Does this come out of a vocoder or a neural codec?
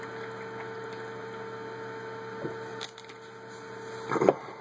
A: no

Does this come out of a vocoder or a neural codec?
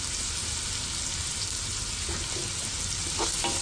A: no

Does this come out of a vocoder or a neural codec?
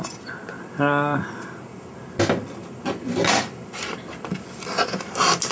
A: no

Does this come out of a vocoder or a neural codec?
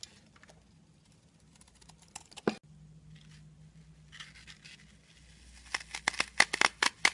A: no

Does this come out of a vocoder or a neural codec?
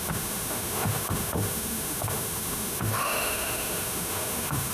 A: yes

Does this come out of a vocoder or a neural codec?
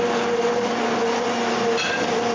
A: no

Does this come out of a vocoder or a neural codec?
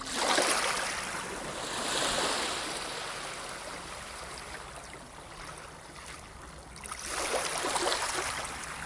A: no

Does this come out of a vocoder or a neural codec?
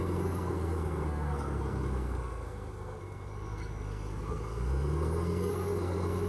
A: yes